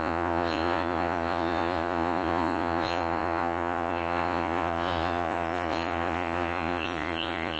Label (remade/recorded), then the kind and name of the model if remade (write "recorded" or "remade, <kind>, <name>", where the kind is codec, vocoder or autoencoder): remade, vocoder, Vocos